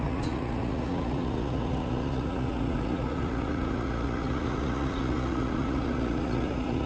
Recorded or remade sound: remade